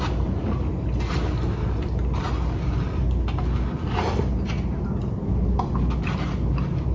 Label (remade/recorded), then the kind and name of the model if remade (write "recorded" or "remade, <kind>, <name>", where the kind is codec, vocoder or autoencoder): recorded